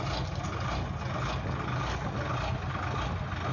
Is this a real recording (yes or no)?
yes